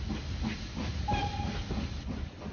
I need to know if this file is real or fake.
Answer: real